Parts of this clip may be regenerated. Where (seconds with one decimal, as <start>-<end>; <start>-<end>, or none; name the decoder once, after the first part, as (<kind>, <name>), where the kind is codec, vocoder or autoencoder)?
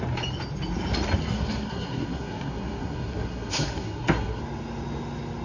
1.2-4.4 (codec, SNAC)